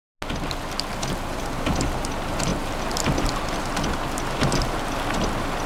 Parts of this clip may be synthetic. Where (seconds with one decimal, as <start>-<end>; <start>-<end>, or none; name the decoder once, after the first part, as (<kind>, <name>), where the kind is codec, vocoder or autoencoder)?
none